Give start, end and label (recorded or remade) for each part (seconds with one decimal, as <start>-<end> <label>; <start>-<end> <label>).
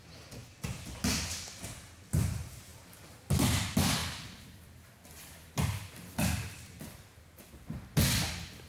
0.0-4.0 recorded; 4.0-7.5 remade; 7.5-8.7 recorded